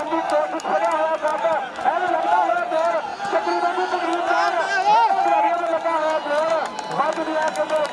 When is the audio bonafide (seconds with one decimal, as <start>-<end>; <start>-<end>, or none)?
0.0-7.9